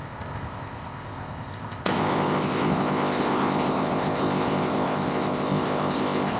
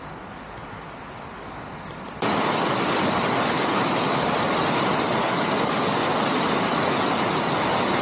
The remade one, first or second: first